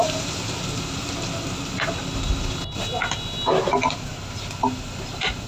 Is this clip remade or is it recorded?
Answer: recorded